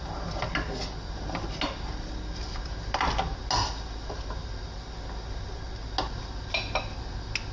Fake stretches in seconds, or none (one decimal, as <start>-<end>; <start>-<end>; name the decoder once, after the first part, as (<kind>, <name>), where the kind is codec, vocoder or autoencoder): none